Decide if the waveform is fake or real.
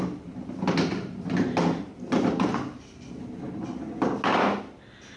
real